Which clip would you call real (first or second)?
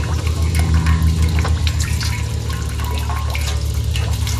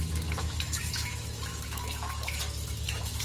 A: first